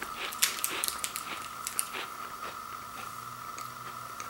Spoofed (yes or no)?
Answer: yes